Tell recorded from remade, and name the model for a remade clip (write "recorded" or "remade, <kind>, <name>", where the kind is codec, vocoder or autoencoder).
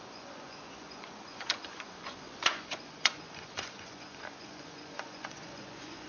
remade, vocoder, Vocos